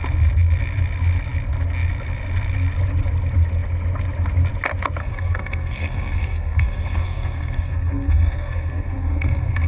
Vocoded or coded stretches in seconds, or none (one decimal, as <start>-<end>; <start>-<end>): 5.0-9.7